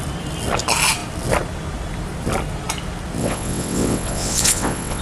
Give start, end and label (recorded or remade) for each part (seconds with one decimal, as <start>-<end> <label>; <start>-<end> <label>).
0.0-3.2 recorded; 3.2-5.0 remade